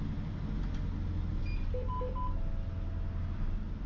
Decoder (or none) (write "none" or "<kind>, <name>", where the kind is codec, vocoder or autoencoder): none